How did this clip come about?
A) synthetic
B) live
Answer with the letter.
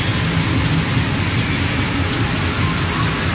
B